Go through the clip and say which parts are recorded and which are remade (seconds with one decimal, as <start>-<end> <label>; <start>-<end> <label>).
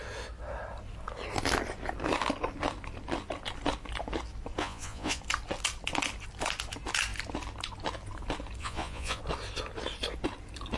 0.0-4.6 recorded; 4.6-5.2 remade; 5.2-8.6 recorded; 8.6-9.2 remade; 9.2-10.8 recorded